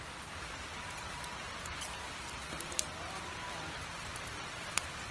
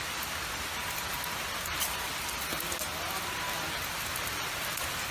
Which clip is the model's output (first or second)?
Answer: first